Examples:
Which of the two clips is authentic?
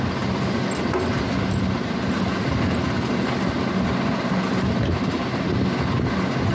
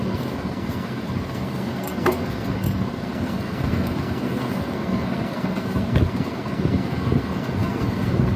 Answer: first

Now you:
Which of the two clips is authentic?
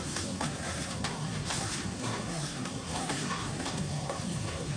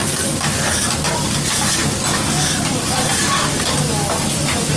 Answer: second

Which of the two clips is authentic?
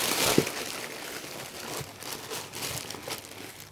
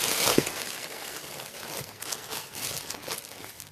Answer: first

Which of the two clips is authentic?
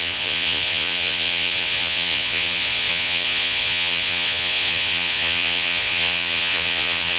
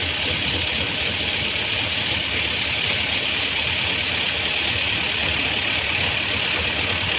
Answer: second